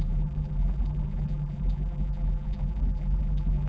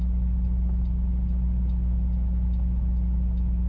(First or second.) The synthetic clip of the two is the first